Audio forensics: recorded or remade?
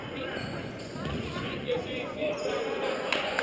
remade